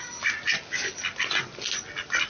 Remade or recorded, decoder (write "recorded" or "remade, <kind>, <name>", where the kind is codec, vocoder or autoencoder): recorded